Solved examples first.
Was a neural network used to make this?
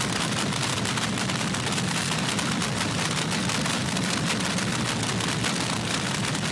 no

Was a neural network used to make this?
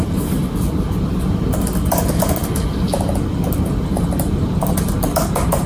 no